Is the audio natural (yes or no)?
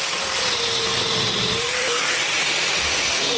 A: no